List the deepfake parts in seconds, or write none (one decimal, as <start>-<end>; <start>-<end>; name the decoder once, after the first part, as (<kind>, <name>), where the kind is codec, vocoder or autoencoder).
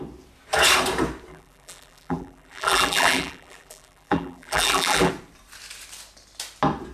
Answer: 1.3-5.1 (vocoder, BigVGAN v2)